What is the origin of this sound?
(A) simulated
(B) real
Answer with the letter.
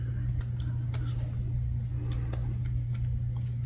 B